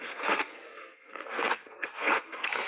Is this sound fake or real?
fake